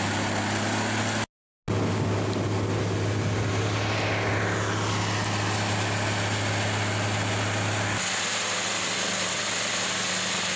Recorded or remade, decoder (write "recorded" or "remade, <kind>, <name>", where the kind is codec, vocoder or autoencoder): recorded